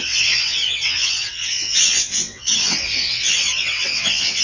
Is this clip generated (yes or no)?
yes